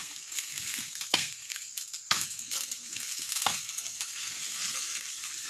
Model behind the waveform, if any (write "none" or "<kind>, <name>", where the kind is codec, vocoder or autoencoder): codec, SNAC